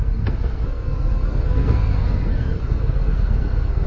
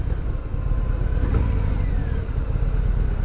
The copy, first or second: first